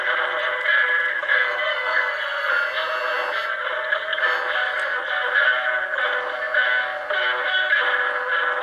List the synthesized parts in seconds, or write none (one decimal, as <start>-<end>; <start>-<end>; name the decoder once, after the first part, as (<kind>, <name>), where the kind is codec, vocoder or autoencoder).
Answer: 1.1-2.5 (codec, SNAC)